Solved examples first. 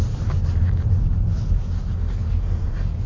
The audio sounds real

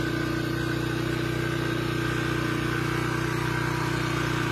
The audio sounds real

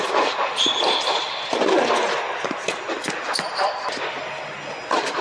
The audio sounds real